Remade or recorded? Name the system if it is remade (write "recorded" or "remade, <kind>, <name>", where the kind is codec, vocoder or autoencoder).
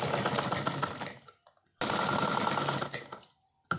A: recorded